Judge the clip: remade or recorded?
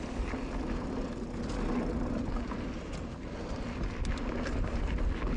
recorded